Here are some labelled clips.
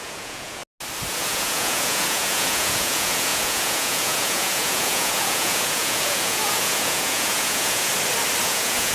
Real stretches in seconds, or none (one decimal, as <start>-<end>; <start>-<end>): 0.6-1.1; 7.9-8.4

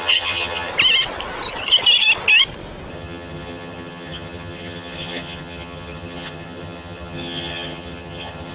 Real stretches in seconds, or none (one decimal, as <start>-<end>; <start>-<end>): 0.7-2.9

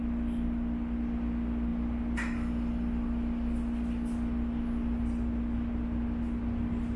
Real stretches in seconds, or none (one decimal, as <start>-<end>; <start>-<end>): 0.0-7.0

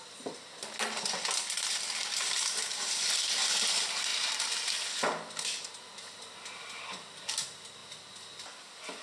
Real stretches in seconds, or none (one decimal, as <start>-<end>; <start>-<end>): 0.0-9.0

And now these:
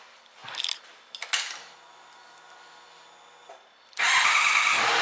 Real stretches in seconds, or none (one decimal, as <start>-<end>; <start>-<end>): 0.0-5.0

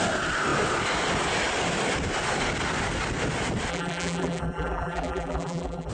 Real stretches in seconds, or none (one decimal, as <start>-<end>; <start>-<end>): 0.0-3.7

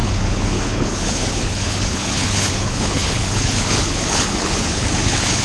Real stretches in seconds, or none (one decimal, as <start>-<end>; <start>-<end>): none

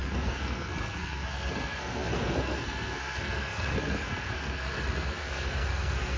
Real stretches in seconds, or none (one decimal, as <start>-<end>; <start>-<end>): none